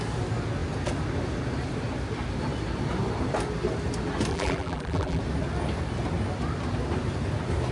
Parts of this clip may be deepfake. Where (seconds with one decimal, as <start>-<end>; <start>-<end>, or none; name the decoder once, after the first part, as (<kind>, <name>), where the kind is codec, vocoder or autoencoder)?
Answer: 4.3-5.2 (vocoder, BigVGAN v2)